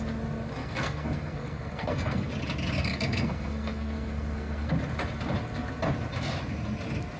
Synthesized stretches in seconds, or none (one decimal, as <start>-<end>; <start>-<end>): 0.6-2.3; 2.8-4.7

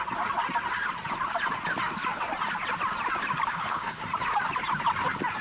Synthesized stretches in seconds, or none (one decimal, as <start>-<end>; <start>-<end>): 3.5-4.0

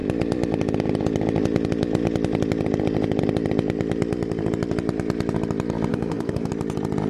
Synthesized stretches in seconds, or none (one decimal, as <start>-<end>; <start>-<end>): 5.9-6.5

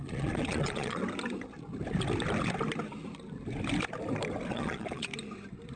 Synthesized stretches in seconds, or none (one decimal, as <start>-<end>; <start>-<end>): 0.0-1.0; 4.5-5.1

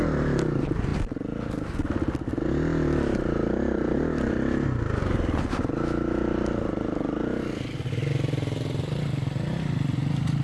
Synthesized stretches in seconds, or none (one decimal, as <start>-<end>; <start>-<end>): none

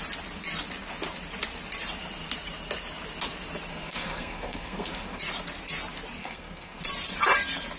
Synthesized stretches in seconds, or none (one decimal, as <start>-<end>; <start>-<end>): 3.7-5.2; 6.2-6.8